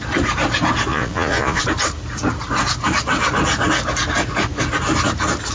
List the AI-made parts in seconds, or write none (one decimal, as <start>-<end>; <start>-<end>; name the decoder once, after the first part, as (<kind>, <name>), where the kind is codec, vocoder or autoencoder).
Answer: 0.9-1.6 (vocoder, Vocos)

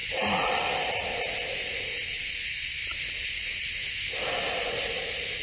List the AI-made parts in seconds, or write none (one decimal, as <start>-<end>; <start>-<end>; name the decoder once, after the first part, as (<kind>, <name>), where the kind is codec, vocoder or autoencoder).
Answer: 0.0-0.5 (vocoder, Vocos)

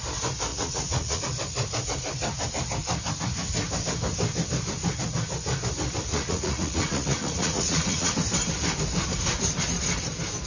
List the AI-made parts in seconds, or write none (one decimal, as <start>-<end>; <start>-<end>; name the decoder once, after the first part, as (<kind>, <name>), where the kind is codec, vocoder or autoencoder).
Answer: 0.5-1.2 (vocoder, Vocos); 6.1-8.1

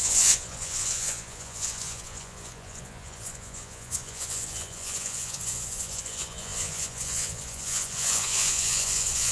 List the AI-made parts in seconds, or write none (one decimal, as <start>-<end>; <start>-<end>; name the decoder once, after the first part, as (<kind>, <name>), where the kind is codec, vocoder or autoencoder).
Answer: 0.0-9.3 (vocoder, Vocos)